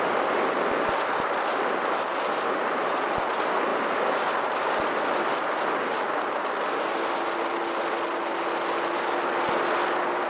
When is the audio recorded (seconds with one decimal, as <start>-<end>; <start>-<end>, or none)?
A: 0.0-10.3